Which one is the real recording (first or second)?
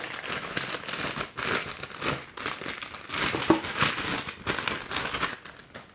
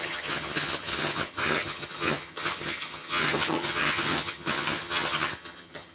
first